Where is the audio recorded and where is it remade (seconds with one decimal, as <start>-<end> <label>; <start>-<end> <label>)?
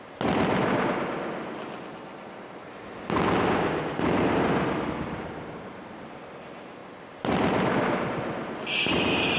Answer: 0.0-9.4 recorded